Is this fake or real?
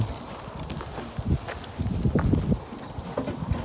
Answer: real